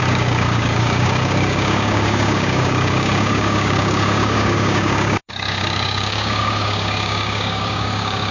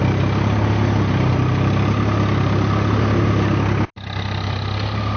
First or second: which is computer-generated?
first